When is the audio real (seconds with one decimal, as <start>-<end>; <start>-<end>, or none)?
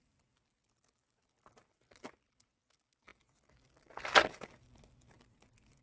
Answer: 0.0-5.8